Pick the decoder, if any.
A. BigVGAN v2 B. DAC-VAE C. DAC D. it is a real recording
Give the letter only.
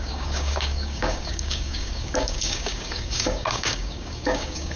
C